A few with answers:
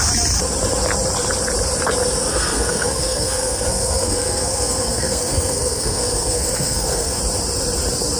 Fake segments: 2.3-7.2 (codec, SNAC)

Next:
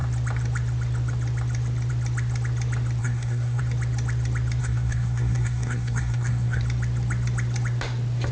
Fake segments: 3.0-3.6 (codec, SNAC); 4.6-6.6